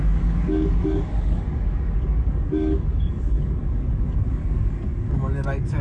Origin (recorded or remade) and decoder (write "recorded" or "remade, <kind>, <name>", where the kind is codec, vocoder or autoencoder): remade, codec, DAC